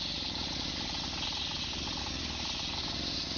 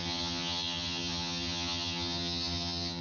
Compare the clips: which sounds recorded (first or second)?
first